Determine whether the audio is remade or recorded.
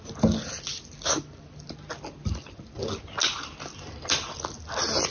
recorded